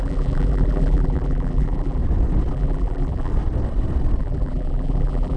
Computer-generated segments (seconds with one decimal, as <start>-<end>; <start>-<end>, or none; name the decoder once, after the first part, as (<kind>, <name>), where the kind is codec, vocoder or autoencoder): 0.0-2.0 (vocoder, BigVGAN v2); 2.5-3.3; 4.2-5.4